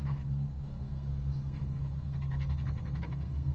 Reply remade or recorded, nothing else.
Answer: remade